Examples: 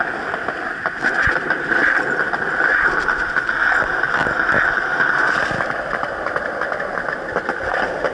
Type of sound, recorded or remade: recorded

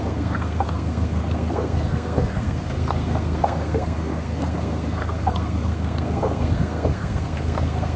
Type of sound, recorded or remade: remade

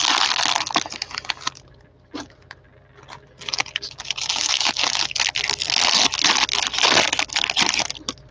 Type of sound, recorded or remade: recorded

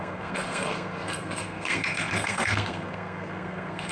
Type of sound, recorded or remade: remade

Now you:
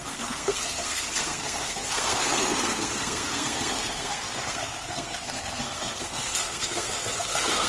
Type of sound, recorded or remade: remade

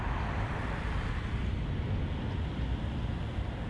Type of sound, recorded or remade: recorded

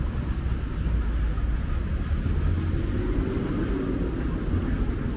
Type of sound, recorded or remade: recorded